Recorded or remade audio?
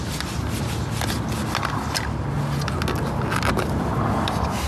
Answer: recorded